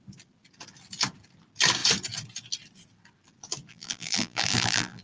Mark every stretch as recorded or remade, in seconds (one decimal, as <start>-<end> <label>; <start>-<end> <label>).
0.0-3.7 recorded; 3.7-5.0 remade